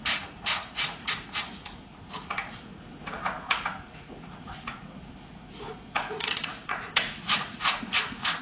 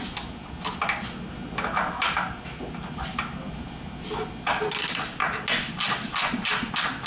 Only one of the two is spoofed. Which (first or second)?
first